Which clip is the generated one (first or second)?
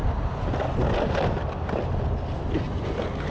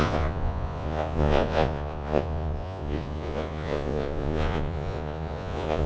second